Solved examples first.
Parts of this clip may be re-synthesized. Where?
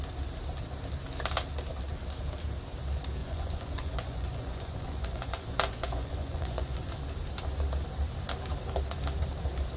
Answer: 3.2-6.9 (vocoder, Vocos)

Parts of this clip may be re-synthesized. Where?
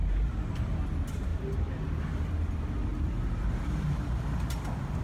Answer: 0.0-0.5 (vocoder, BigVGAN v2); 2.9-3.8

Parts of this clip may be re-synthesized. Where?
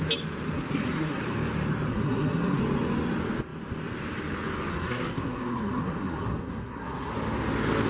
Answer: 0.5-1.2 (codec, SNAC); 1.9-2.6; 4.7-7.1